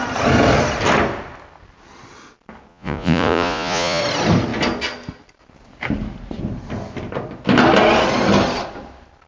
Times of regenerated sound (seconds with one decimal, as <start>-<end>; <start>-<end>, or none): 2.7-4.0